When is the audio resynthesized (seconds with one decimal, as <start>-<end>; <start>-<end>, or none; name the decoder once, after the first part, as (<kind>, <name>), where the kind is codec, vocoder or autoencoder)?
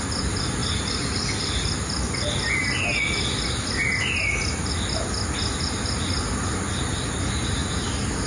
none